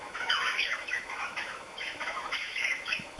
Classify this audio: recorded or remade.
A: remade